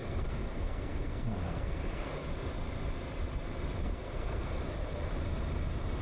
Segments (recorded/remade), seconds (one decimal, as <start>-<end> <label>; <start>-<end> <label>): 0.0-2.1 remade; 2.1-3.8 recorded; 3.8-4.6 remade; 4.6-6.0 recorded